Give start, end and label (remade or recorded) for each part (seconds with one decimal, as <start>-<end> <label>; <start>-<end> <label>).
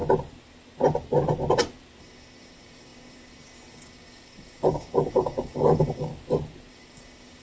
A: 0.0-2.0 recorded; 2.0-6.1 remade; 6.1-6.7 recorded; 6.7-7.4 remade